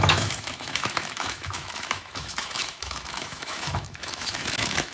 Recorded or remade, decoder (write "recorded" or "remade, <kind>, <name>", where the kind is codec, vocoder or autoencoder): remade, autoencoder, DAC-VAE